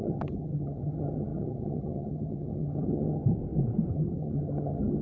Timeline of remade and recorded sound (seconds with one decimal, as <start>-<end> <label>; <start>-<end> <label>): 0.0-3.2 remade; 3.2-3.9 recorded; 3.9-5.0 remade